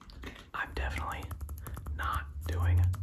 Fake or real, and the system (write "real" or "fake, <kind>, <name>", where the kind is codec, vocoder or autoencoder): real